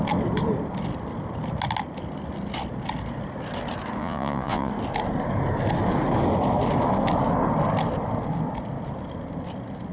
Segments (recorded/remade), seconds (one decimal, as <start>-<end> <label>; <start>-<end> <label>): 0.0-4.0 recorded; 4.0-4.7 remade; 4.7-9.9 recorded